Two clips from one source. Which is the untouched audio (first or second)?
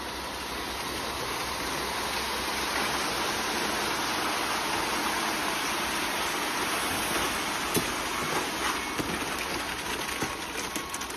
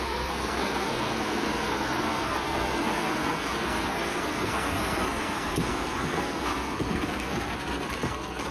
first